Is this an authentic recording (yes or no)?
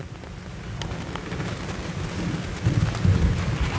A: yes